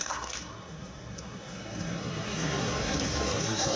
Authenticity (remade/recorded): remade